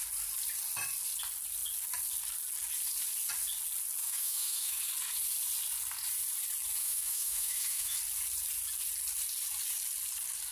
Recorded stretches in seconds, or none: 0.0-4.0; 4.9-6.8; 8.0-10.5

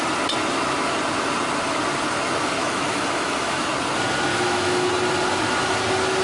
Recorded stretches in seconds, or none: 0.0-2.6; 3.7-4.3; 4.9-6.2

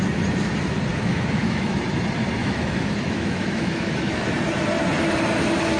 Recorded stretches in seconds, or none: 0.0-0.9; 1.8-2.4; 4.3-5.8

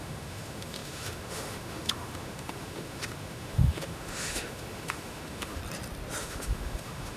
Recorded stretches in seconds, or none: 5.6-6.2

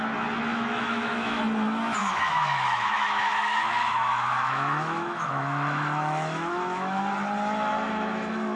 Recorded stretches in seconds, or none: 0.0-0.5; 1.4-2.0; 7.1-7.7

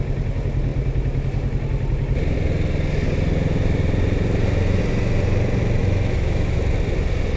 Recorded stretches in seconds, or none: 0.0-5.8; 6.6-7.4